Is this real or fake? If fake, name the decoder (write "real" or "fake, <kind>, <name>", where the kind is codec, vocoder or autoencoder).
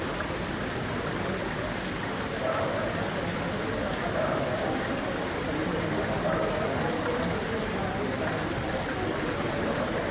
real